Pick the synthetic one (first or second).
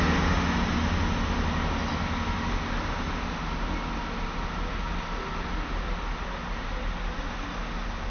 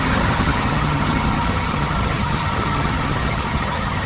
second